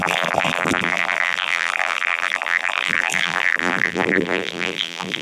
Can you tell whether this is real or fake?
fake